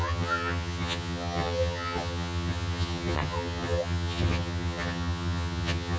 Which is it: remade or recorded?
remade